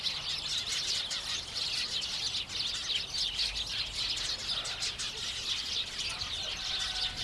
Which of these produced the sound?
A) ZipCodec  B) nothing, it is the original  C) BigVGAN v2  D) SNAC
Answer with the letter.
B